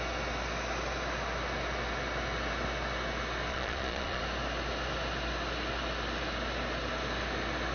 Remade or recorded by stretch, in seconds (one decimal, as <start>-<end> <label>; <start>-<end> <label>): 0.0-3.5 recorded; 3.5-4.2 remade; 4.2-7.7 recorded